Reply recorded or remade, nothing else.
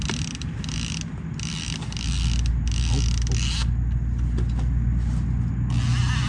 recorded